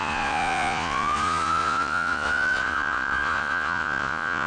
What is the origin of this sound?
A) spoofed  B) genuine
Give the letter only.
A